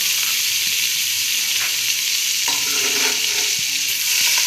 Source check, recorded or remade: remade